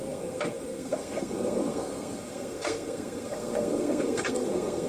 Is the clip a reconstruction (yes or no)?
yes